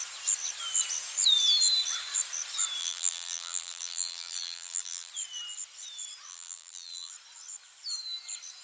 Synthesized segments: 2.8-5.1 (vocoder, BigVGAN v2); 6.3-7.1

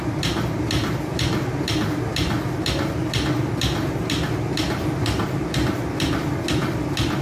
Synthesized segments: none

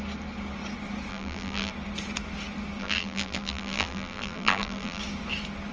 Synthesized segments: 1.1-1.7 (vocoder, BigVGAN v2); 2.8-5.0

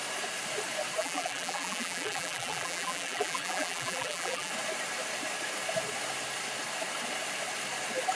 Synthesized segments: 1.0-4.5 (vocoder, BigVGAN v2)

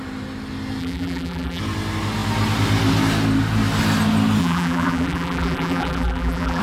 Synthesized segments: 0.8-1.6 (vocoder, BigVGAN v2); 4.4-6.6

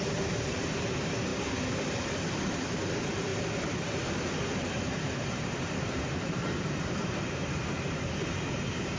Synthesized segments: 0.0-1.3 (vocoder, BigVGAN v2); 2.9-3.3; 4.8-9.0

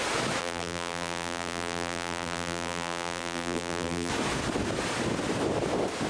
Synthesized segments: 0.4-4.1 (vocoder, BigVGAN v2)